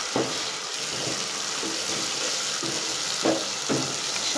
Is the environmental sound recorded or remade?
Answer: recorded